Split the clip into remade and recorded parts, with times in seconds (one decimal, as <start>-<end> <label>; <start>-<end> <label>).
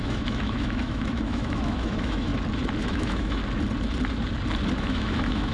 0.0-2.3 remade; 2.3-2.8 recorded; 2.8-3.4 remade; 3.4-4.8 recorded; 4.8-5.5 remade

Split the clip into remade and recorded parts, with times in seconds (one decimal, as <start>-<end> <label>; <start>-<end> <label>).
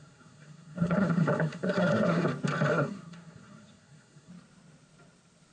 0.0-2.3 remade; 2.3-2.7 recorded; 2.7-4.3 remade; 4.3-5.5 recorded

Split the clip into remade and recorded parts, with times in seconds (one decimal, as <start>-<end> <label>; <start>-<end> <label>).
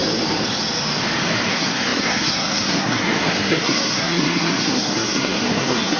0.0-1.5 recorded; 1.5-6.0 remade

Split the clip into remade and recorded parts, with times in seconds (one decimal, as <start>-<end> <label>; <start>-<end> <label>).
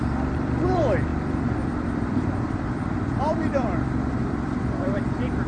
0.0-5.5 remade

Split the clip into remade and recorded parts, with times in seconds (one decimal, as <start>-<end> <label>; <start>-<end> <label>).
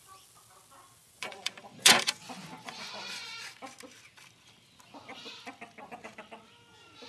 0.0-1.0 recorded; 1.0-3.6 remade; 3.6-7.1 recorded